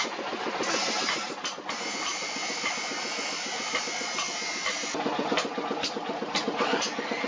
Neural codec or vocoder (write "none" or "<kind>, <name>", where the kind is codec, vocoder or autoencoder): none